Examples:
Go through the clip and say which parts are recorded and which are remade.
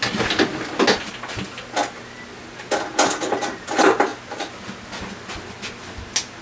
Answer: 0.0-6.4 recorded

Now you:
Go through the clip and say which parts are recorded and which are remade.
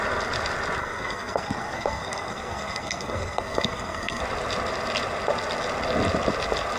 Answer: 0.0-0.8 recorded; 0.8-4.2 remade; 4.2-6.8 recorded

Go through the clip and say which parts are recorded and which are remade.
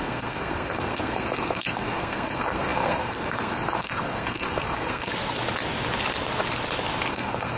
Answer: 0.0-5.1 remade; 5.1-7.1 recorded; 7.1-7.6 remade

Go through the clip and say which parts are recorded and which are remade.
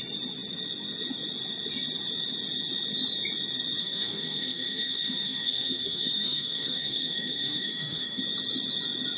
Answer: 0.0-3.8 recorded; 3.8-8.2 remade; 8.2-9.2 recorded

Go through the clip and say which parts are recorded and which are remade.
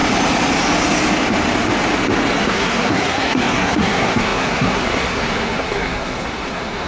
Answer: 0.0-2.4 recorded; 2.4-6.9 remade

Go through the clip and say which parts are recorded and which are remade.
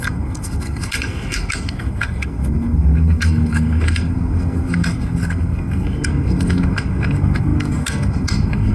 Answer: 0.0-8.7 remade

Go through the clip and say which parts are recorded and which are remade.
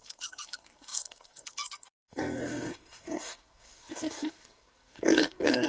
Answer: 0.0-5.7 remade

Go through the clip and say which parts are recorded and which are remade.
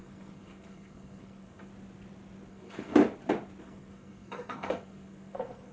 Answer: 0.0-1.7 remade; 1.7-2.5 recorded; 2.5-3.0 remade; 3.0-3.6 recorded; 3.6-5.7 remade